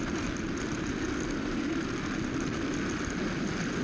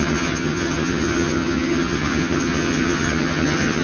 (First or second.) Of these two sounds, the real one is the first